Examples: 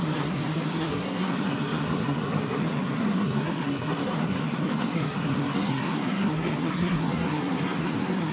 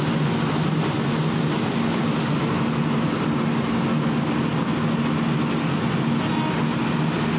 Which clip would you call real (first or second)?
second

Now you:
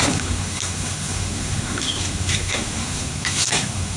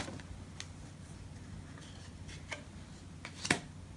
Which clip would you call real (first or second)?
second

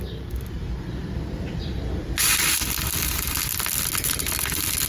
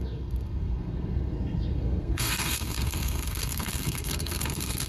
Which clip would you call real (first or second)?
first